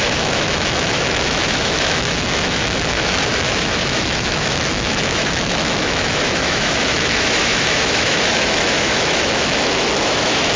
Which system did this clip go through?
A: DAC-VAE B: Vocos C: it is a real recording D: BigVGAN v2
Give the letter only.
A